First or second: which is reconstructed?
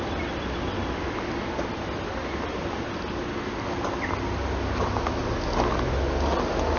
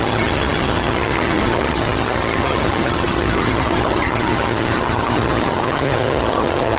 second